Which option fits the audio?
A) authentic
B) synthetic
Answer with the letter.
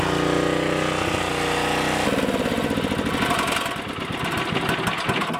A